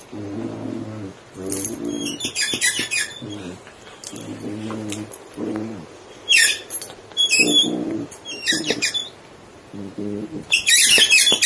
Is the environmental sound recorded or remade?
recorded